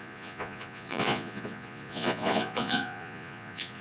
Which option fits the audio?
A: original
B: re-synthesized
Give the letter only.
B